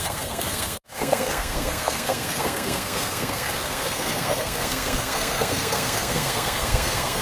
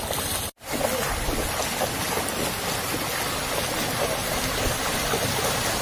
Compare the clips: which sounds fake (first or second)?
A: first